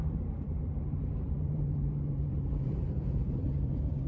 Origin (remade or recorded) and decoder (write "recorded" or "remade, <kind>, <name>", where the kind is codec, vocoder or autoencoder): remade, vocoder, BigVGAN v2